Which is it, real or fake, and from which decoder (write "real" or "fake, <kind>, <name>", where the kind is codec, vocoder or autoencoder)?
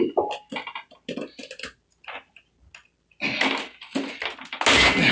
real